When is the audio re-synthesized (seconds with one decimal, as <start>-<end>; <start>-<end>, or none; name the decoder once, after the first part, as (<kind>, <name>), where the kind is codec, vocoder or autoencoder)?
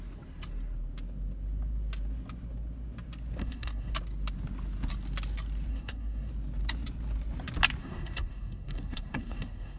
3.4-3.9 (codec, SNAC); 5.7-6.3; 7.8-9.8